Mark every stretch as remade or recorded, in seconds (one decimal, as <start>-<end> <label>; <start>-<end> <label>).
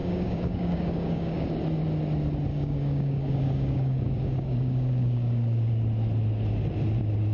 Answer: 0.0-1.5 remade; 1.5-2.5 recorded; 2.5-5.7 remade; 5.7-7.3 recorded